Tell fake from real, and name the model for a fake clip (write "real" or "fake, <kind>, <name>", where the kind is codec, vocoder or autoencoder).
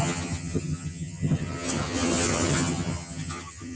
fake, vocoder, HiFi-GAN